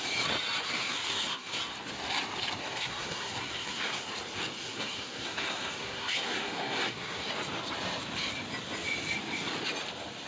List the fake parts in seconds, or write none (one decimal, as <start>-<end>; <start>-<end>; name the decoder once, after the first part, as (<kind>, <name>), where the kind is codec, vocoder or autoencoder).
0.6-1.6 (codec, SNAC); 2.6-4.1; 4.6-7.3